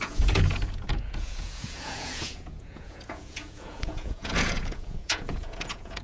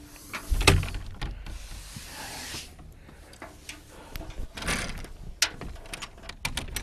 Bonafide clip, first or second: second